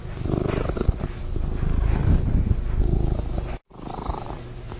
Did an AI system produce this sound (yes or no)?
no